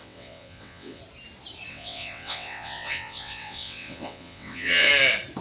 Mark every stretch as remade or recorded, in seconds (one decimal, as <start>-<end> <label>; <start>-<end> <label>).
0.0-1.0 remade; 1.0-1.7 recorded; 1.7-4.9 remade; 4.9-5.4 recorded